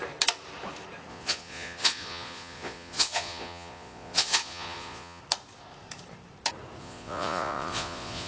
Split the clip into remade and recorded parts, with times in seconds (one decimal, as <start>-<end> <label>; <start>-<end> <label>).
0.0-1.1 recorded; 1.1-5.2 remade; 5.2-6.8 recorded; 6.8-8.3 remade